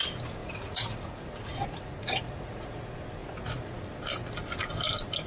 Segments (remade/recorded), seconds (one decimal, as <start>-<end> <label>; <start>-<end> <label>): 0.0-0.4 recorded; 0.4-2.8 remade; 2.8-3.2 recorded; 3.2-4.0 remade; 4.0-5.3 recorded